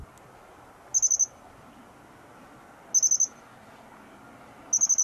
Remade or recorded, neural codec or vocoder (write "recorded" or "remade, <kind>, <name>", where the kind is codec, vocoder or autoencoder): recorded